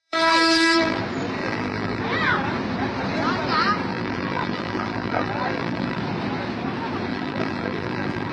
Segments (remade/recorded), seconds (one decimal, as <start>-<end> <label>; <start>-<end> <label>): 0.0-1.0 remade; 1.0-1.4 recorded; 1.4-2.0 remade; 2.0-3.9 recorded; 3.9-6.0 remade; 6.0-7.1 recorded; 7.1-8.3 remade